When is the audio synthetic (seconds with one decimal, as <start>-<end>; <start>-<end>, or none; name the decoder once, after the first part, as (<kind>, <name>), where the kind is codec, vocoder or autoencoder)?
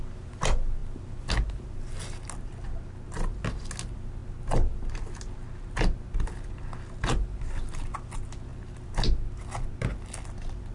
none